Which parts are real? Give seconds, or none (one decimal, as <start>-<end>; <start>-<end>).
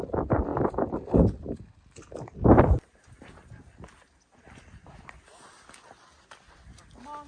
0.0-7.3